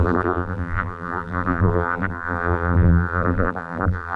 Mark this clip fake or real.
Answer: fake